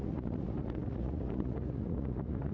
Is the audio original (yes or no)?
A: no